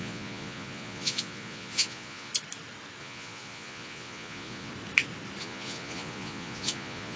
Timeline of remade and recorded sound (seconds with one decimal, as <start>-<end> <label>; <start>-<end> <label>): 0.0-2.3 remade; 2.3-3.0 recorded; 3.0-4.7 remade; 4.7-5.4 recorded; 5.4-7.2 remade